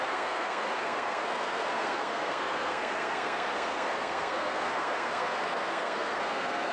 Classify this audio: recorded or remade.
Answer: remade